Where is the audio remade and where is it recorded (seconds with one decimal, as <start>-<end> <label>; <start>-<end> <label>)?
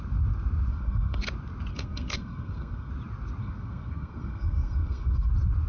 0.0-0.7 recorded; 0.7-1.2 remade; 1.2-1.7 recorded; 1.7-2.9 remade; 2.9-3.4 recorded; 3.4-5.3 remade; 5.3-5.7 recorded